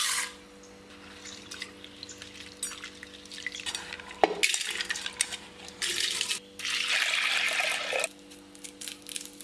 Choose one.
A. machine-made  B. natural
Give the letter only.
B